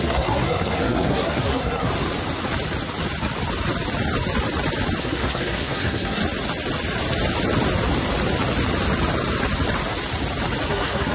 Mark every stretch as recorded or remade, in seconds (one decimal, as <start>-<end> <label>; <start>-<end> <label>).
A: 0.0-1.9 remade; 1.9-5.0 recorded; 5.0-6.2 remade; 6.2-10.7 recorded; 10.7-11.1 remade